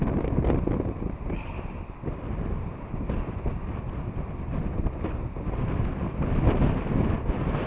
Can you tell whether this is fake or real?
real